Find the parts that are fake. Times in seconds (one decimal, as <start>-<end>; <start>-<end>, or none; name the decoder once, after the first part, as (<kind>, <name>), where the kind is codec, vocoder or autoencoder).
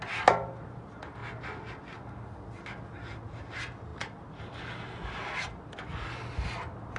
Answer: none